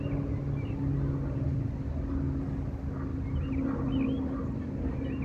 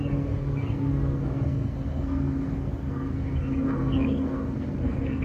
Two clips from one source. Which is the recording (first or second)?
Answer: first